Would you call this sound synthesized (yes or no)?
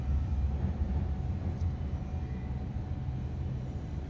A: no